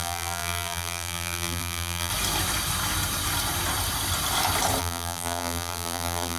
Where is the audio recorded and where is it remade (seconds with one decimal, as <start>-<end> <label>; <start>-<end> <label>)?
0.0-2.1 remade; 2.1-4.8 recorded; 4.8-6.4 remade